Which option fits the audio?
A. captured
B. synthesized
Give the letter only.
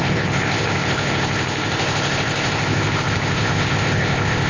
B